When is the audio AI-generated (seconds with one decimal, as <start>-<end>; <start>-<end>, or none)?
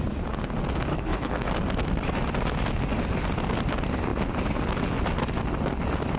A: 0.9-1.5